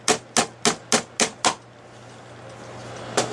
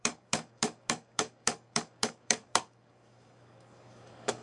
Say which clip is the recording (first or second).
first